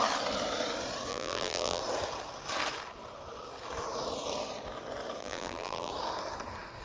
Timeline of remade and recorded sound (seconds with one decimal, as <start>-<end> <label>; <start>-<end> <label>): 0.0-1.1 recorded; 1.1-1.8 remade; 1.8-5.2 recorded; 5.2-5.9 remade; 5.9-6.8 recorded